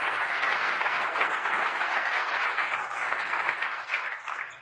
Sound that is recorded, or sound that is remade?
remade